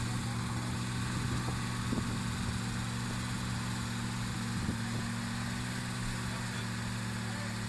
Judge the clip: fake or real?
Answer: real